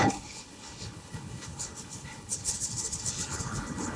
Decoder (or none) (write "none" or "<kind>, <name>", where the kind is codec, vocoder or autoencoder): codec, HILCodec